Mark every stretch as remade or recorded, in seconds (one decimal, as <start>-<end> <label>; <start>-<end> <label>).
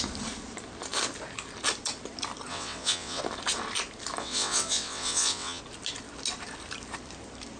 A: 0.0-2.5 recorded; 2.5-3.2 remade; 3.2-4.2 recorded; 4.2-5.6 remade; 5.6-7.6 recorded